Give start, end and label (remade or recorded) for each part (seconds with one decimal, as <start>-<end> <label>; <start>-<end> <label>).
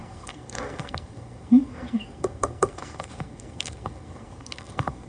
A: 0.0-5.1 remade